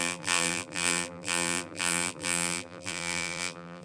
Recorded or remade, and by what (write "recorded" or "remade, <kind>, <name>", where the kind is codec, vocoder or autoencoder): remade, vocoder, BigVGAN v2